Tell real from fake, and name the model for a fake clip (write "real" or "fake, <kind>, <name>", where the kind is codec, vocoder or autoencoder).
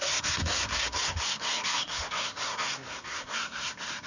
fake, codec, SNAC